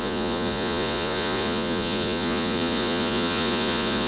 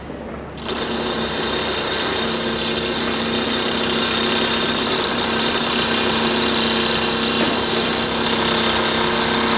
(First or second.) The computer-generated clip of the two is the first